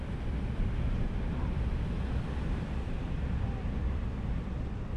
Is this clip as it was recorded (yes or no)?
no